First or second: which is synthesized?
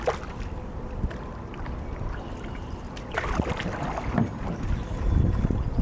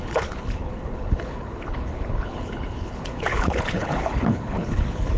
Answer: second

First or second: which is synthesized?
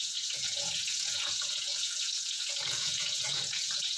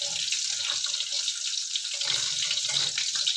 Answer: first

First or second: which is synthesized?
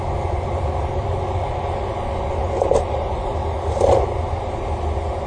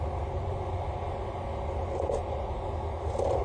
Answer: first